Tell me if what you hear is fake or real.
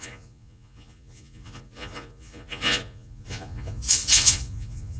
fake